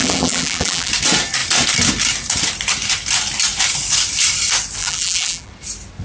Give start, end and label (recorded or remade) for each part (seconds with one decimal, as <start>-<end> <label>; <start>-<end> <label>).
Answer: 0.0-0.9 remade; 0.9-4.8 recorded; 4.8-5.5 remade; 5.5-6.0 recorded